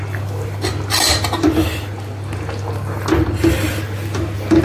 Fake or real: real